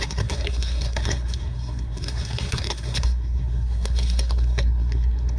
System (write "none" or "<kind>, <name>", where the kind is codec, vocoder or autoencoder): codec, SNAC